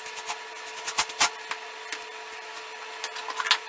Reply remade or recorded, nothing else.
recorded